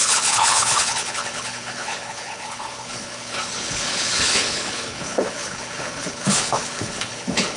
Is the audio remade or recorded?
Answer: remade